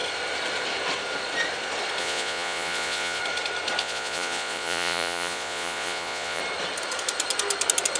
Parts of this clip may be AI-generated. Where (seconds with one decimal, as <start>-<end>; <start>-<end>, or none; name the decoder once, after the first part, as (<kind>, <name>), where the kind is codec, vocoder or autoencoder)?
2.0-3.2 (vocoder, Vocos); 3.8-6.4